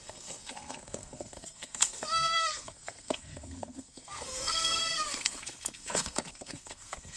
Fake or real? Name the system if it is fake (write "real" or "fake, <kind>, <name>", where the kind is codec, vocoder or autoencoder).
fake, codec, SNAC